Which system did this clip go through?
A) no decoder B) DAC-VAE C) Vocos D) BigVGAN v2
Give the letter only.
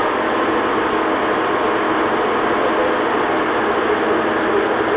A